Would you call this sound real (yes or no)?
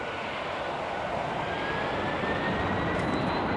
yes